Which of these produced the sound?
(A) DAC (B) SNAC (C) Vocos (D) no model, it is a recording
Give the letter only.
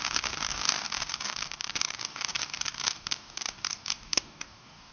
A